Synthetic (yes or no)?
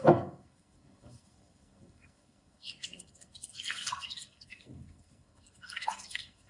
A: yes